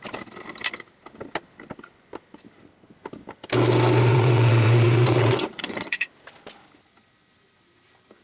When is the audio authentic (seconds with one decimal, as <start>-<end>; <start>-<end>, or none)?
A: 0.0-4.1; 6.1-8.2